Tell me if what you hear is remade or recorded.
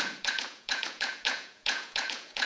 remade